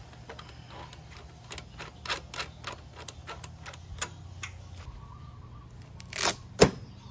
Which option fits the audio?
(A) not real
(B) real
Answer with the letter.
B